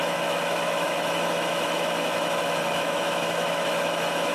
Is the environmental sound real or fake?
fake